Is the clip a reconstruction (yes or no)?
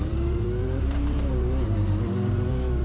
yes